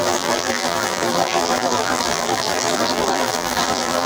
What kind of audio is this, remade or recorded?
remade